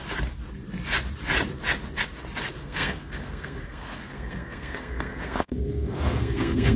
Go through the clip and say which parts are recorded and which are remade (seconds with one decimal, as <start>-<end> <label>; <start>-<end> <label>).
0.0-2.6 recorded; 2.6-6.8 remade

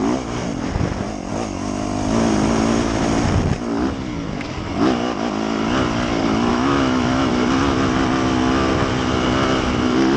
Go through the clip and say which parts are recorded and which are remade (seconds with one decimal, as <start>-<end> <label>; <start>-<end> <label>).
0.0-6.5 recorded; 6.5-7.3 remade; 7.3-10.2 recorded

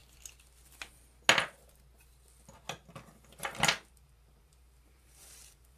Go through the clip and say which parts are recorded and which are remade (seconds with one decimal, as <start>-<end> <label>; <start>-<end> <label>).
0.0-3.5 recorded; 3.5-5.8 remade

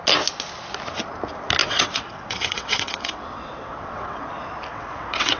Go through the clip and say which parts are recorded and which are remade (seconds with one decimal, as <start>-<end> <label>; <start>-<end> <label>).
0.0-1.6 recorded; 1.6-4.3 remade; 4.3-4.7 recorded; 4.7-5.4 remade

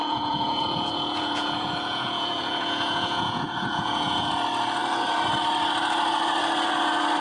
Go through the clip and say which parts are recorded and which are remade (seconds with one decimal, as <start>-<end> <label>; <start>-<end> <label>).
0.0-4.3 remade; 4.3-7.2 recorded

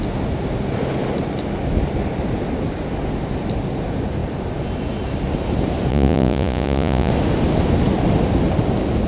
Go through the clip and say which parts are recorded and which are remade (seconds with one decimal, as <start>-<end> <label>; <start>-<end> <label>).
0.0-5.9 recorded; 5.9-7.1 remade; 7.1-9.1 recorded